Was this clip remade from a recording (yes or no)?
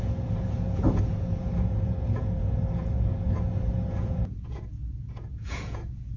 yes